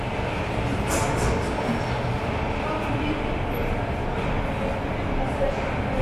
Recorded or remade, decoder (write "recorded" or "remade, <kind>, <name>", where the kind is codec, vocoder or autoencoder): recorded